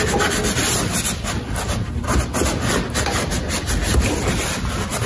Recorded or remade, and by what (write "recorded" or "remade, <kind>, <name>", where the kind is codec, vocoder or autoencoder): recorded